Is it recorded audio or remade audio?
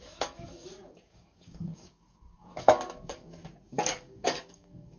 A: remade